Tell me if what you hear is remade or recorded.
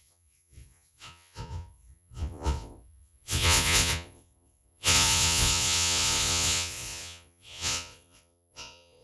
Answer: remade